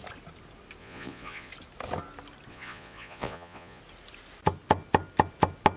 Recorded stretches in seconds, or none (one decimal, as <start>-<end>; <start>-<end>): 0.0-0.8; 1.5-2.5; 3.8-5.8